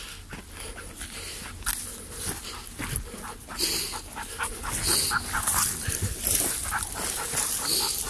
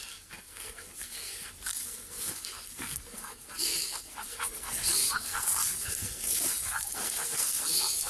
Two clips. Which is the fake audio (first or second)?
second